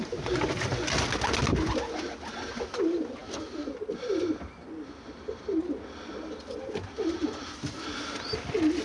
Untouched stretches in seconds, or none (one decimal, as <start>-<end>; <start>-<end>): 0.0-8.8